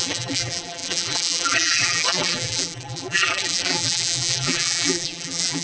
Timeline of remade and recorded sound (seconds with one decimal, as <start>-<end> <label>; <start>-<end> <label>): 0.0-5.6 remade